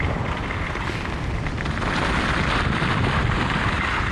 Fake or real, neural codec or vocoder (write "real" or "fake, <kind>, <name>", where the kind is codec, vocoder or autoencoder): real